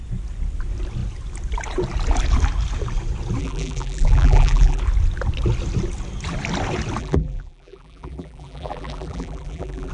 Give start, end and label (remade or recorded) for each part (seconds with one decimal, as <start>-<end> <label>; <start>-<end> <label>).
0.0-3.4 recorded; 3.4-4.8 remade; 4.8-7.0 recorded; 7.0-9.9 remade